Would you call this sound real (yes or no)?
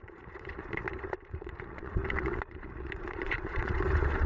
no